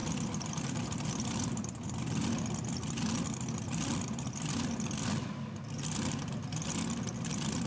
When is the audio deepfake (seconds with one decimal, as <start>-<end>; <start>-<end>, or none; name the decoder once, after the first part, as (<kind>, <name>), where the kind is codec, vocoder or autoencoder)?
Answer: none